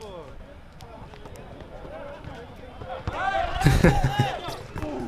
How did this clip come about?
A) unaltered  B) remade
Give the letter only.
A